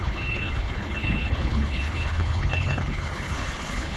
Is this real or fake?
fake